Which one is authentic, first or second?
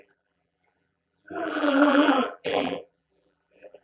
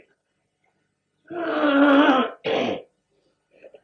second